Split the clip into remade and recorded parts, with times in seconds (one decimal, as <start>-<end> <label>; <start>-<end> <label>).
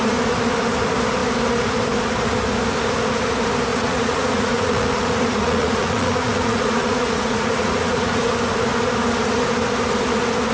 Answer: 0.0-3.7 recorded; 3.7-8.2 remade; 8.2-10.5 recorded